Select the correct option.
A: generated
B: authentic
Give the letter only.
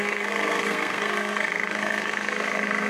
A